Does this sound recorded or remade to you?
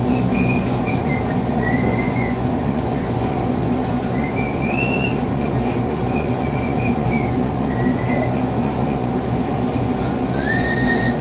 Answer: remade